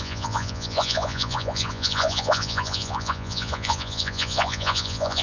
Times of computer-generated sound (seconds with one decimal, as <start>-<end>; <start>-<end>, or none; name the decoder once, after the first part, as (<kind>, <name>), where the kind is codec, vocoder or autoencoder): 0.0-5.2 (vocoder, Vocos)